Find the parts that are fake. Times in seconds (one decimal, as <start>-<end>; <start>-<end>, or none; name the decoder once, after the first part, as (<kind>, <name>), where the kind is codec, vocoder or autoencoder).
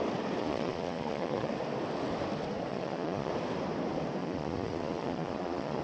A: 0.4-1.5 (vocoder, Vocos); 2.7-3.3; 4.2-5.8